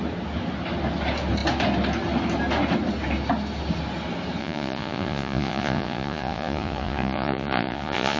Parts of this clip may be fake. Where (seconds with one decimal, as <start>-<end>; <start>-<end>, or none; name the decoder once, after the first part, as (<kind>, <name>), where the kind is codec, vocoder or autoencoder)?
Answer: 4.4-8.2 (vocoder, Vocos)